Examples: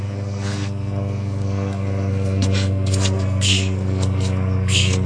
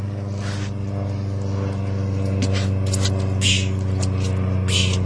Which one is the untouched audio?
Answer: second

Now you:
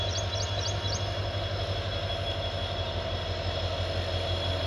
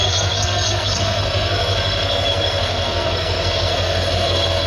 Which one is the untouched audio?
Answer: first